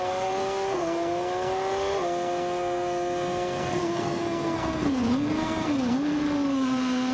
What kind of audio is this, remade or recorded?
remade